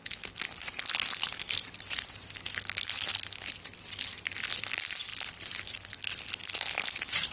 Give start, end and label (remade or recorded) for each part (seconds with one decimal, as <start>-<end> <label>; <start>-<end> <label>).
0.0-7.3 recorded